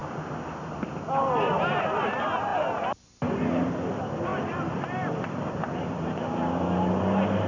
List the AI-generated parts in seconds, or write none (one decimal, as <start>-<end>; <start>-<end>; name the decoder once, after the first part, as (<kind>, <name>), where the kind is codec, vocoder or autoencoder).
4.3-6.2 (vocoder, BigVGAN v2)